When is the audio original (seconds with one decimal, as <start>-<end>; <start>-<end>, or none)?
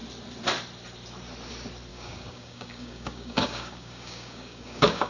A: 0.0-1.9